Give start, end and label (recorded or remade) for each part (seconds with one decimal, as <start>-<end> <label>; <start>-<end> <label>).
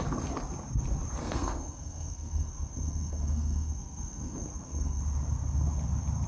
0.0-1.2 recorded; 1.2-5.0 remade; 5.0-6.3 recorded